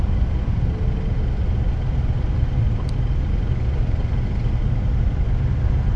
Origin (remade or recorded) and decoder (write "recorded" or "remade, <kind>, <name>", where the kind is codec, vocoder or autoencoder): recorded